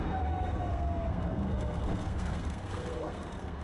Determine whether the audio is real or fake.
fake